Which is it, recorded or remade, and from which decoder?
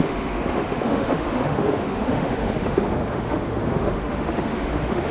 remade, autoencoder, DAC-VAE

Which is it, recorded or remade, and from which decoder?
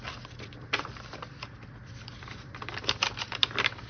remade, vocoder, BigVGAN v2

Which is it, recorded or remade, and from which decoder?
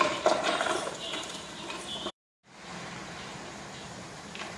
remade, vocoder, BigVGAN v2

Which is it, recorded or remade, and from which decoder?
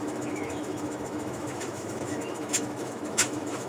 remade, autoencoder, DAC-VAE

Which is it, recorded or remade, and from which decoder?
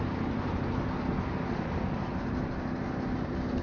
recorded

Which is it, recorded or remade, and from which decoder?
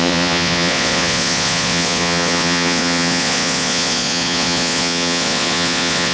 remade, vocoder, Vocos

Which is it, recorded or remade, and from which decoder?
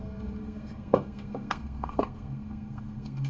remade, codec, SNAC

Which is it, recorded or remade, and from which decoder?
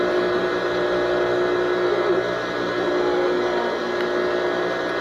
recorded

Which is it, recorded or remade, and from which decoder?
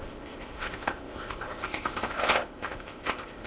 remade, codec, ZipCodec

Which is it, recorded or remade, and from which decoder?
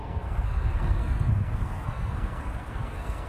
remade, codec, SNAC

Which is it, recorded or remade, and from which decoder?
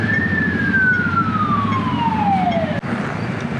recorded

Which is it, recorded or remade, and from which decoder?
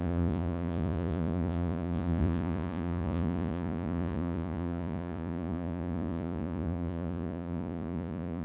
remade, vocoder, Vocos